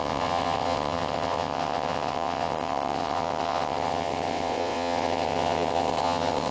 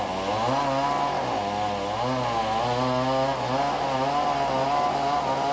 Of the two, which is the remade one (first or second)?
first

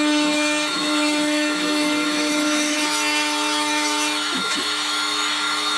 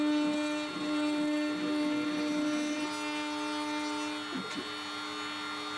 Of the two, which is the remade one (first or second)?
first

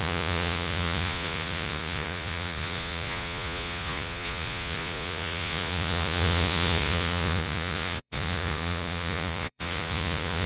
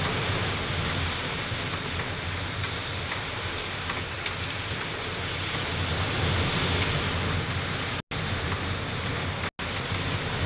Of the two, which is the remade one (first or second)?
first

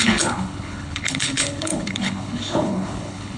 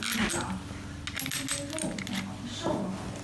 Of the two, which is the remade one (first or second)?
first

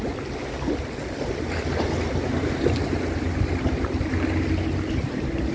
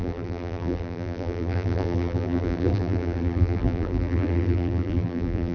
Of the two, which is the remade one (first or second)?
second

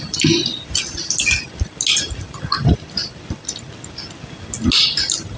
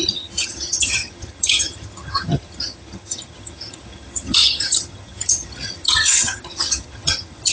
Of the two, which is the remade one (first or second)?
second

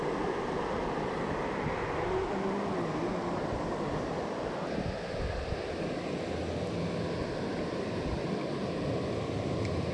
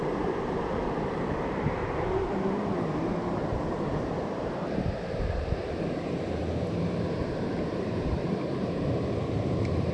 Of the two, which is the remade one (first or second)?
second